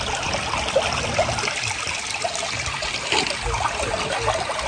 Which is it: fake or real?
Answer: real